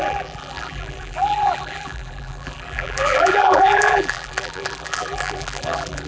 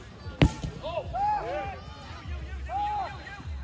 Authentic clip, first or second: second